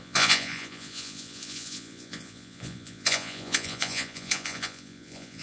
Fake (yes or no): yes